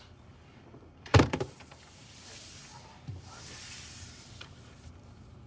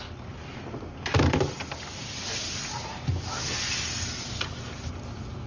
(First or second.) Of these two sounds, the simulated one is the first